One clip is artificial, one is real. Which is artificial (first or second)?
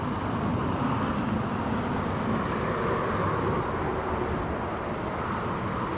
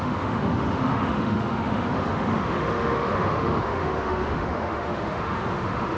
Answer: second